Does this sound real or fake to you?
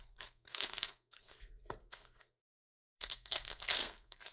fake